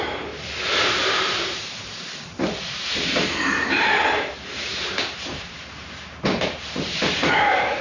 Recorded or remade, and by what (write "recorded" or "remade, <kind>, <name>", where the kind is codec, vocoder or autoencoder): remade, vocoder, BigVGAN v2